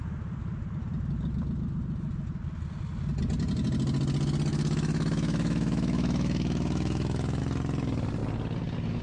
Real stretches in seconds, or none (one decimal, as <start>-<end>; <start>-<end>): 0.0-4.5; 7.4-9.0